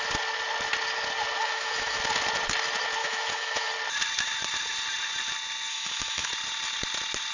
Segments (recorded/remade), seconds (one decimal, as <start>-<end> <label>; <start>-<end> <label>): 0.0-1.4 recorded; 1.4-2.0 remade; 2.0-3.0 recorded; 3.0-3.7 remade; 3.7-5.7 recorded; 5.7-6.3 remade; 6.3-7.3 recorded